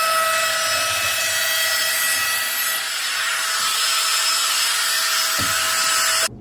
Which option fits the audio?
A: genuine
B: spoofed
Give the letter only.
A